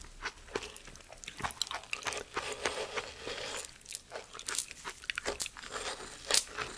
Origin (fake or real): real